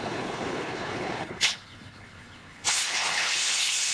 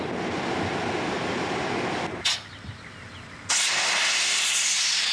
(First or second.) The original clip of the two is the second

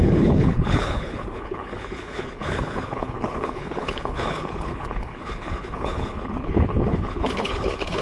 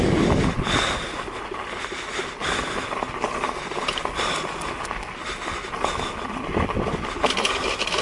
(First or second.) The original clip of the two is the second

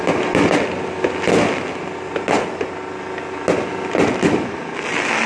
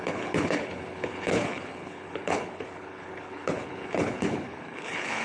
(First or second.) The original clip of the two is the first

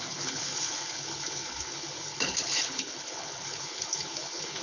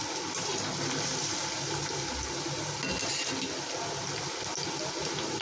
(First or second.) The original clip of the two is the second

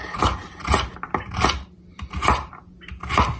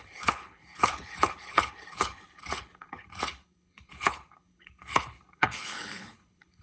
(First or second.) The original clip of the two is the first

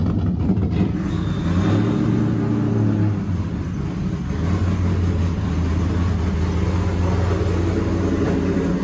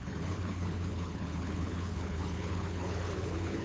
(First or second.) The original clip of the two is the first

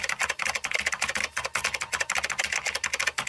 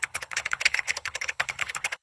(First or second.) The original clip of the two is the first